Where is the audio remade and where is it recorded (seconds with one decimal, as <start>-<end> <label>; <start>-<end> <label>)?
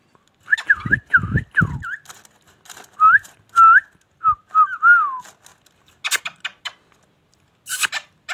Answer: 0.0-8.3 recorded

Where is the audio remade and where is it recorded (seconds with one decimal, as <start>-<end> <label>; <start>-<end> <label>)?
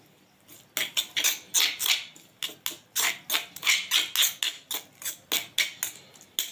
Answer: 0.0-6.5 recorded